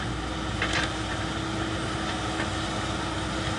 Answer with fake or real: real